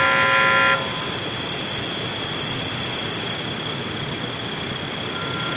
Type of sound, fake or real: real